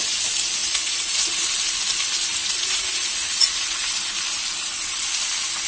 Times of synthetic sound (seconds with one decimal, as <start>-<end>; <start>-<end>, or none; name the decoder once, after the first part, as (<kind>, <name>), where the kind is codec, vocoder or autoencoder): 0.6-1.5 (vocoder, Vocos); 2.3-3.9